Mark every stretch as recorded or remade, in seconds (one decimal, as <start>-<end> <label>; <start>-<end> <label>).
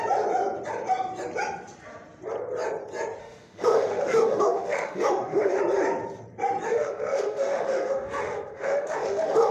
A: 0.0-3.2 recorded; 3.2-5.6 remade; 5.6-6.7 recorded; 6.7-9.5 remade